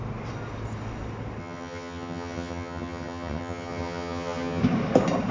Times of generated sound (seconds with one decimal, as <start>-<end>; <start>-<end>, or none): 1.4-4.6